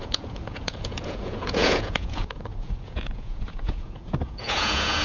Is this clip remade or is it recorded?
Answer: remade